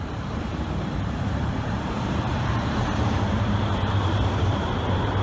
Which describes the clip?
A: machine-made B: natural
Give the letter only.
A